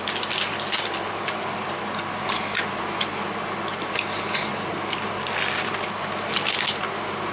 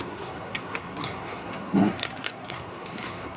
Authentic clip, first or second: first